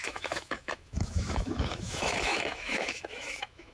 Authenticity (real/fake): fake